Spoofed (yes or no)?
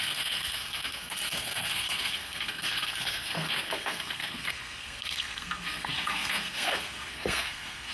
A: yes